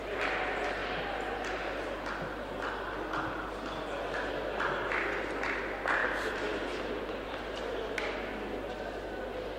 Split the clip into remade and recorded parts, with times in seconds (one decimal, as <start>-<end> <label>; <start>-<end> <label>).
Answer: 0.0-6.0 recorded; 6.0-7.6 remade; 7.6-9.6 recorded